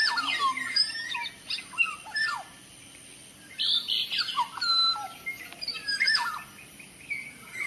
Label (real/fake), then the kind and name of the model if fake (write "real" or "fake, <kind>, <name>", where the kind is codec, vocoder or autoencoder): real